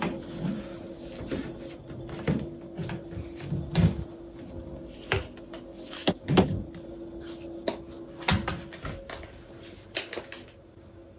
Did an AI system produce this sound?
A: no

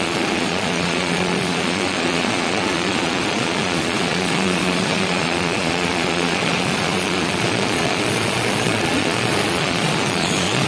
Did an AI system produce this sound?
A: yes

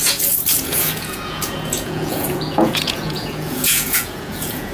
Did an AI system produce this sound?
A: yes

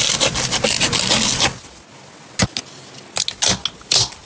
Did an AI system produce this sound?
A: no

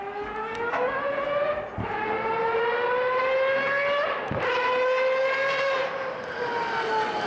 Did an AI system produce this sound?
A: no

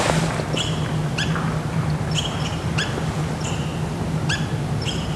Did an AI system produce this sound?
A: no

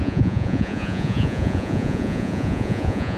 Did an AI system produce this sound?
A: yes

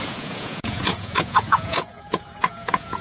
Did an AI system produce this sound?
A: yes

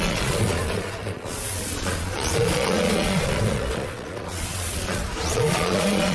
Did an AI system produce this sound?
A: yes